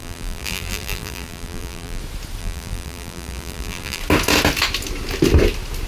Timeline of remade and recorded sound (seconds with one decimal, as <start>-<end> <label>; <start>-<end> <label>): 0.0-2.0 remade; 2.0-2.4 recorded; 2.4-4.0 remade; 4.0-5.9 recorded